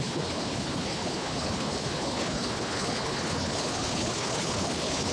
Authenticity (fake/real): fake